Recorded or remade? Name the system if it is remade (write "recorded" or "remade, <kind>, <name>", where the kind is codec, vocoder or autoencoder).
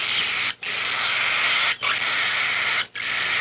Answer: recorded